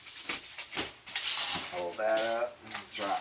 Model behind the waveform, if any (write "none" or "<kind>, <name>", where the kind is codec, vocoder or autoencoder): none